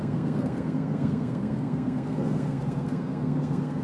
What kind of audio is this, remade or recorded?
remade